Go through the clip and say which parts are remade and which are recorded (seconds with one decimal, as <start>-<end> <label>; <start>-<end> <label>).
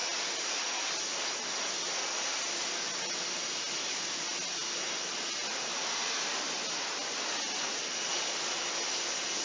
0.0-9.4 recorded